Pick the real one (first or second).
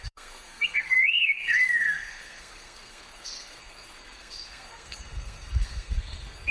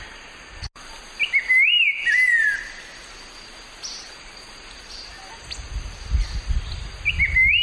second